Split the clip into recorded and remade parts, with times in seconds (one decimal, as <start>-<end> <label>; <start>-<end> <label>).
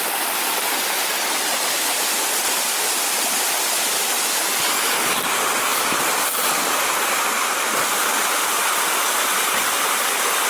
0.0-5.7 recorded; 5.7-6.3 remade; 6.3-10.5 recorded